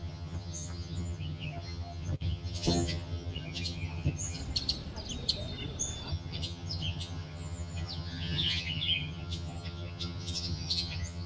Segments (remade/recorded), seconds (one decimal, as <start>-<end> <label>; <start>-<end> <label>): 0.0-4.4 remade; 4.4-6.1 recorded; 6.1-11.3 remade